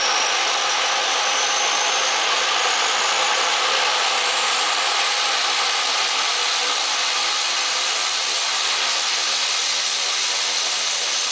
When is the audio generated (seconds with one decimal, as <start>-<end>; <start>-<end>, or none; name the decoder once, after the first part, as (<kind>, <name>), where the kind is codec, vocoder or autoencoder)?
none